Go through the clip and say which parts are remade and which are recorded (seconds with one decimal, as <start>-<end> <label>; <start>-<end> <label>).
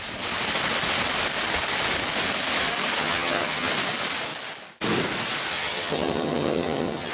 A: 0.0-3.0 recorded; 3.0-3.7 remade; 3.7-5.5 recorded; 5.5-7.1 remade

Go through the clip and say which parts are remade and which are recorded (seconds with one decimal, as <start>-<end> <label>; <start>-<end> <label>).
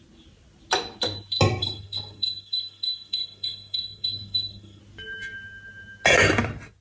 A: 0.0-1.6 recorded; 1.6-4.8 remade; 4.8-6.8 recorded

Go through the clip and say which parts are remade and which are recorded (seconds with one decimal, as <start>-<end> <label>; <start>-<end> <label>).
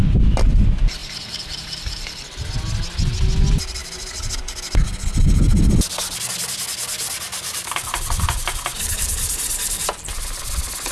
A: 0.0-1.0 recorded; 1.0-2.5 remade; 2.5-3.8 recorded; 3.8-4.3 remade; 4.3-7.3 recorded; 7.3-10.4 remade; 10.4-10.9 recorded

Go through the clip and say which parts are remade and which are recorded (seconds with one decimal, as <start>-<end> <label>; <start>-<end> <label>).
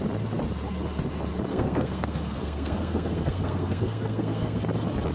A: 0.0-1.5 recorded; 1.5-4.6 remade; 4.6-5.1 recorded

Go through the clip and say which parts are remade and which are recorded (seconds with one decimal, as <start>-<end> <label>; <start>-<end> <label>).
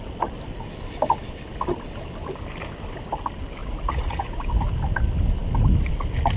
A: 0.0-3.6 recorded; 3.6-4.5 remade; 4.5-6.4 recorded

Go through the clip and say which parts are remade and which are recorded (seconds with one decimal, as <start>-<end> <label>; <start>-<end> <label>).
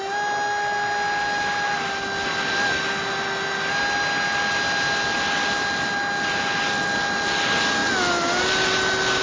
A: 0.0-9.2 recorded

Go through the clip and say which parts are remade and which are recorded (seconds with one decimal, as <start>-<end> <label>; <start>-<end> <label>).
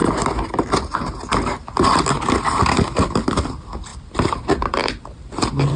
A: 0.0-3.9 recorded; 3.9-4.9 remade; 4.9-5.8 recorded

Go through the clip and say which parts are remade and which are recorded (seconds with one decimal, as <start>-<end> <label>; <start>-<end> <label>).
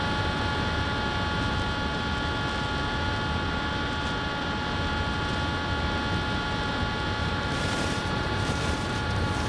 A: 0.0-7.2 recorded; 7.2-9.5 remade